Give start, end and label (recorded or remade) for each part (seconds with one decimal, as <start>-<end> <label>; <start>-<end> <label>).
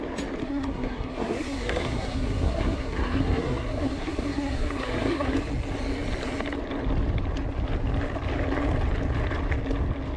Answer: 0.0-0.4 recorded; 0.4-5.3 remade; 5.3-10.2 recorded